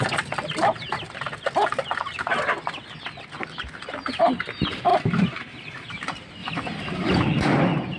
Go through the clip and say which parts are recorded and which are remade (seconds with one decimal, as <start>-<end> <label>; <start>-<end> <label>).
0.0-4.9 recorded; 4.9-5.9 remade; 5.9-6.4 recorded; 6.4-7.4 remade; 7.4-8.0 recorded